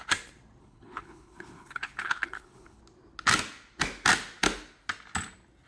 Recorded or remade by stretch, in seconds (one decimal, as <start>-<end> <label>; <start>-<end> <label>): 0.0-0.6 recorded; 0.6-2.8 remade; 2.8-5.7 recorded